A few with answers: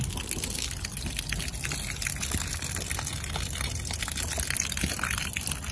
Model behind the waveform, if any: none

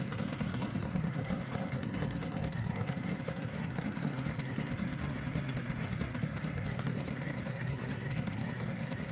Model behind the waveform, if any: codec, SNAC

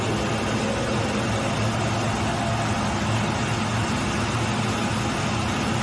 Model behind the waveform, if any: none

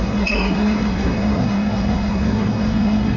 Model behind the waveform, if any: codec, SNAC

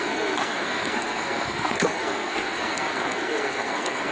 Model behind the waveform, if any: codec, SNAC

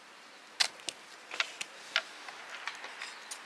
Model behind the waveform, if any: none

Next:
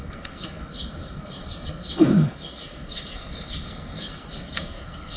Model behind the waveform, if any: codec, SNAC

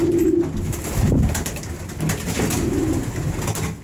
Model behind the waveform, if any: none